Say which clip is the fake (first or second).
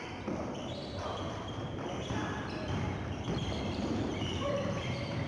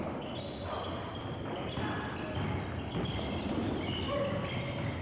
first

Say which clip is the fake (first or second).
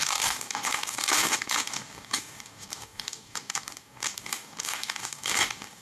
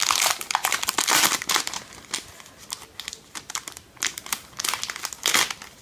first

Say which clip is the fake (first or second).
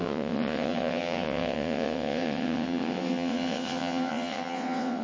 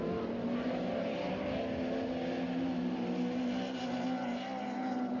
first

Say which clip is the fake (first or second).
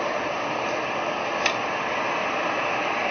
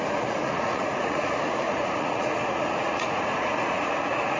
second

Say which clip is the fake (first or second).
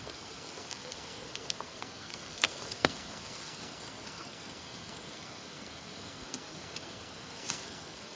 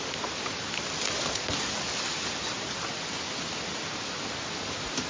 first